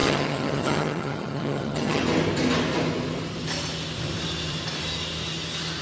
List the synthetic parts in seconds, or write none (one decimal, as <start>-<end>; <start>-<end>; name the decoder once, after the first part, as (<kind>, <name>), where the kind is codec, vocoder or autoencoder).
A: 0.0-2.0 (vocoder, HiFi-GAN)